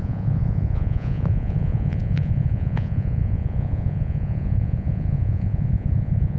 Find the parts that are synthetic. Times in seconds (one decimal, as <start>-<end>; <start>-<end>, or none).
0.0-6.4